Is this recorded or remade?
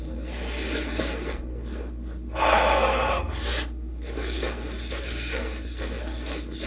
remade